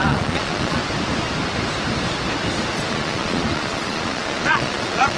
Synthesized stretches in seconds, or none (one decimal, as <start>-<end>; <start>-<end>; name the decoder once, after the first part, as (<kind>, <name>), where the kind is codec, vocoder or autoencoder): 0.0-0.8 (vocoder, Vocos); 2.9-5.2